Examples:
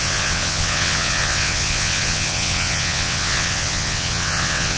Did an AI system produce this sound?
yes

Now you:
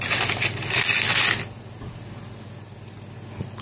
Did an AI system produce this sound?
no